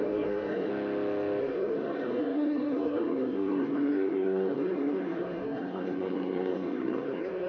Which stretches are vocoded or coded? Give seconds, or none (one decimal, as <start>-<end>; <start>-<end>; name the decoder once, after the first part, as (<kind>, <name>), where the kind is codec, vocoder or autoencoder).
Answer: 0.0-0.7 (codec, SNAC); 1.4-7.5